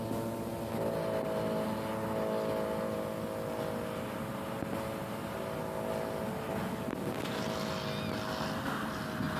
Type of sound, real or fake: real